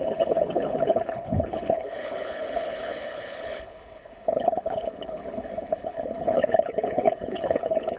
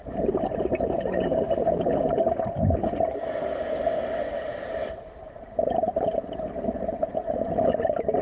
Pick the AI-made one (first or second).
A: first